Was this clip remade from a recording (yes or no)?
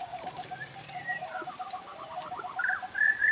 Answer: yes